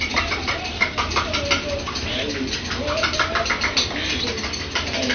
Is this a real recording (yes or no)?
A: yes